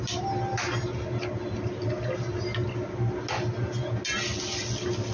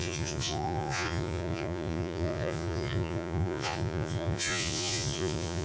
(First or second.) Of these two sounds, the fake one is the second